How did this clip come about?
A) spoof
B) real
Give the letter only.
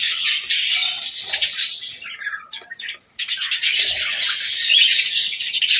B